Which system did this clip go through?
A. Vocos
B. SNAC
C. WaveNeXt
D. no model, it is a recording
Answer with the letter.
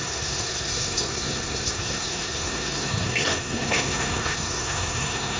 B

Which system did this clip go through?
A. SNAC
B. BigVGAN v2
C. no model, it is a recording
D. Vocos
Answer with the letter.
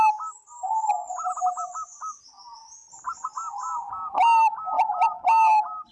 C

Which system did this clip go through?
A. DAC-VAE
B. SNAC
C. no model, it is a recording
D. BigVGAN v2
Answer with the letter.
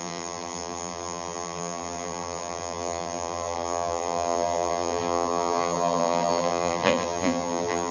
D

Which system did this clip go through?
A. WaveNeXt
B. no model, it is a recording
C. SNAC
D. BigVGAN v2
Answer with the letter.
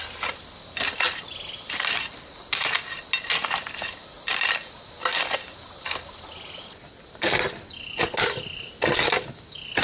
B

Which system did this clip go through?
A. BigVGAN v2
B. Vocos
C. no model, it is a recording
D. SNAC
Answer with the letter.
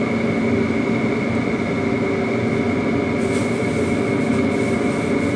C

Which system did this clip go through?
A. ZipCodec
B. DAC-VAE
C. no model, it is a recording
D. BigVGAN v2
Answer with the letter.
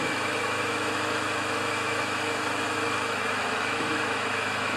B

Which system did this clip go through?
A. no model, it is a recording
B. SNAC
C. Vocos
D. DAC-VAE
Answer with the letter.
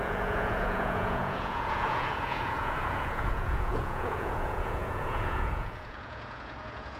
C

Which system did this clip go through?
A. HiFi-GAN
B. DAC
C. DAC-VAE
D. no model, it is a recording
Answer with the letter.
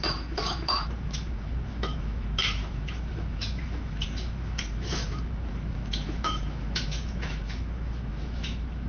C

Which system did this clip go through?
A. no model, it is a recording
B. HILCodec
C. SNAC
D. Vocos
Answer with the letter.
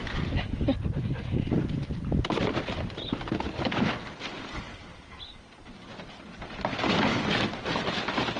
A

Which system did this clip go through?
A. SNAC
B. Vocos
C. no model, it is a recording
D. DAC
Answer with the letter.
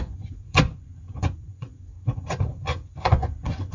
B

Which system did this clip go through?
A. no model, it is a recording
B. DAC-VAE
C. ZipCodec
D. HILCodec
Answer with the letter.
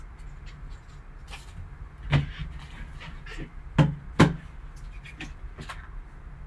A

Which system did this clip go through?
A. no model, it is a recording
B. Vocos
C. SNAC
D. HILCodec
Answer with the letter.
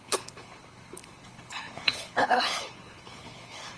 D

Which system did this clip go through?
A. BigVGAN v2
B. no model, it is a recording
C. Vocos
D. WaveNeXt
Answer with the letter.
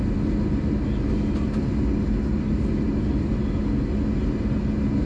B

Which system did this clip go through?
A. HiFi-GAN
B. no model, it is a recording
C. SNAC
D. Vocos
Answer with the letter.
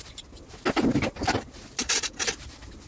B